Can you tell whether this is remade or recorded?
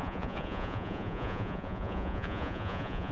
remade